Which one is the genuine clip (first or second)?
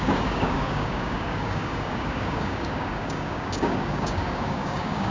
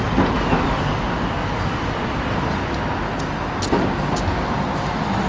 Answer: second